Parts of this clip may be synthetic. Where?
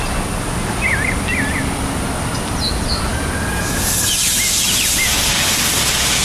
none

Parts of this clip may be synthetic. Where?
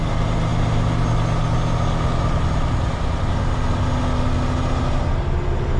none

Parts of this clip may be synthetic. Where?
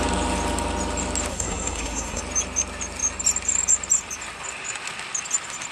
1.3-2.2 (codec, SNAC)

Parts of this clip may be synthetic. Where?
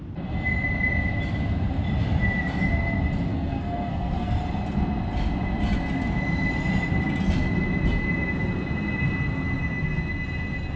3.3-4.3 (codec, SNAC)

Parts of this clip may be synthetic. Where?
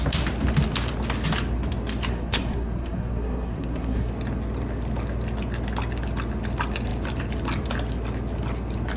2.1-4.1 (codec, SNAC)